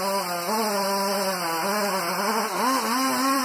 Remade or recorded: recorded